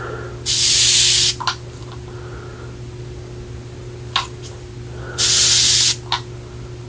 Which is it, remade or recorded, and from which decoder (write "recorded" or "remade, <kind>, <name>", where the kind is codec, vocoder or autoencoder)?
recorded